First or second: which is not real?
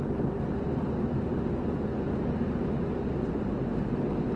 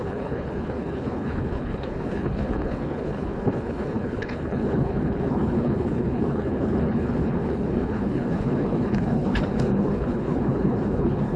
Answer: second